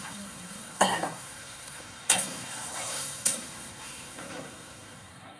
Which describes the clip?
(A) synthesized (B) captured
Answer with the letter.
A